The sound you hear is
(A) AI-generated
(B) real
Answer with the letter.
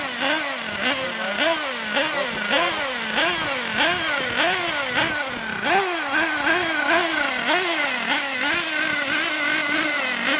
B